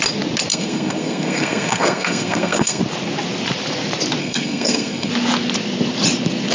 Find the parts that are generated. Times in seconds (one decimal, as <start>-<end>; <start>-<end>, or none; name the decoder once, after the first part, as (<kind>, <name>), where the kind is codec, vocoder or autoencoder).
0.5-2.8 (codec, SNAC); 4.2-5.1